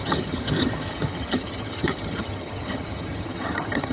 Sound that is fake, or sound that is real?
fake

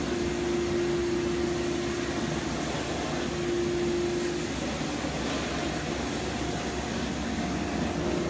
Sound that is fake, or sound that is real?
real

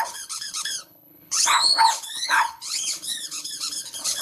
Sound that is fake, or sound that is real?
fake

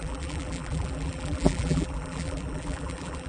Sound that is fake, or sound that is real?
fake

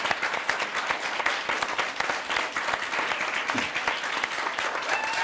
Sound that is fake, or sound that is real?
real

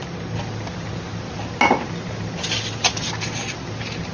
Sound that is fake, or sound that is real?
real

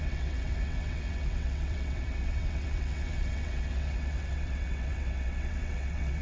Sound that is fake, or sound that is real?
fake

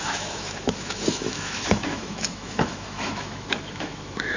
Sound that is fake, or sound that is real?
fake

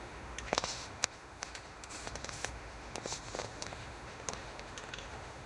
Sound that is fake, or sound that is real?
fake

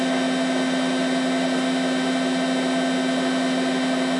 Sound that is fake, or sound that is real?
real